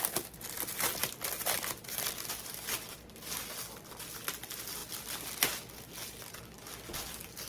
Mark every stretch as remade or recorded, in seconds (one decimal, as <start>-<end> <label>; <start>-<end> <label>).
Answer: 0.0-7.5 recorded